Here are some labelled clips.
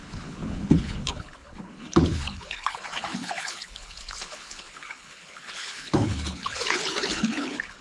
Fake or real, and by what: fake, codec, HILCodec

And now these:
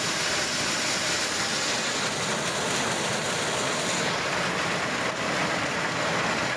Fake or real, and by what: real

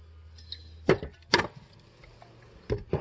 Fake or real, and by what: real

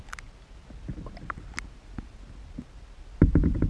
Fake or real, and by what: real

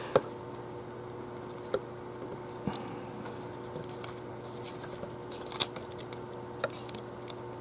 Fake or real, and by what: real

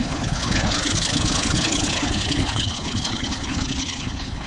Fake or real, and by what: fake, codec, HILCodec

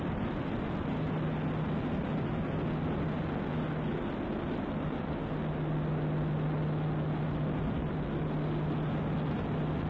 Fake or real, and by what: real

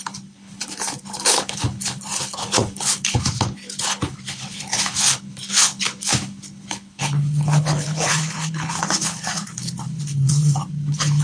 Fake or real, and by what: fake, codec, HILCodec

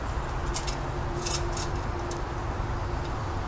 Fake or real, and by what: real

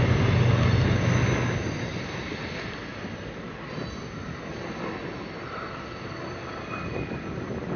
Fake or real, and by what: real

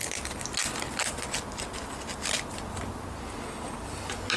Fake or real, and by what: real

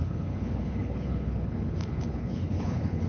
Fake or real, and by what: fake, codec, HILCodec